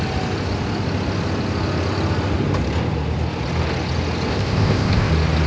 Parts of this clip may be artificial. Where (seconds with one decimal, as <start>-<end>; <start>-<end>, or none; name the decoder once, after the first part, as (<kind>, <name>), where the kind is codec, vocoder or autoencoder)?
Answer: 4.3-5.1 (codec, ZipCodec)